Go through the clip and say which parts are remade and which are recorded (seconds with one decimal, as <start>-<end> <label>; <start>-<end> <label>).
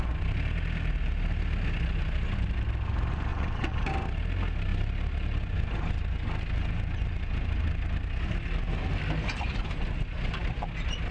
0.0-3.3 recorded; 3.3-3.9 remade; 3.9-11.1 recorded